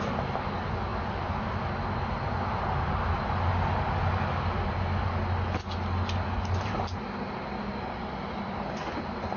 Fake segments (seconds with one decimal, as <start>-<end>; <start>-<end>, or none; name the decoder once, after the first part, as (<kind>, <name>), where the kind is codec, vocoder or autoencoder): none